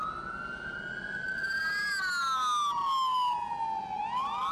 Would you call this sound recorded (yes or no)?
yes